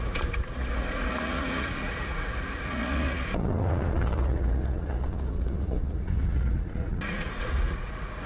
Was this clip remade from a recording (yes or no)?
yes